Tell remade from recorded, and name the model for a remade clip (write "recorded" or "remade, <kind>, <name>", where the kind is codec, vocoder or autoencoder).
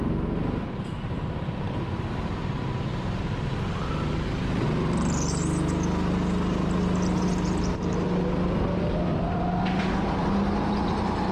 recorded